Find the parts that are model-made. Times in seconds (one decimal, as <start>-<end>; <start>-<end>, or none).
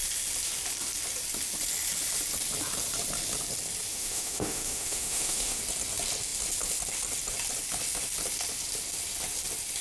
3.9-5.6